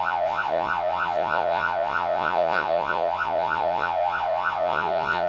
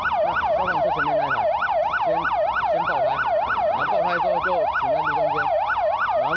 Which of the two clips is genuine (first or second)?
second